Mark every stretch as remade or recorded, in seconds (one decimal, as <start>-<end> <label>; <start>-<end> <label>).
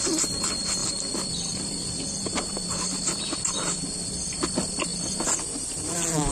0.0-0.8 remade; 0.8-3.4 recorded; 3.4-4.9 remade; 4.9-6.3 recorded